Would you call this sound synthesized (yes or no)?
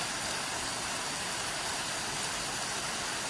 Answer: no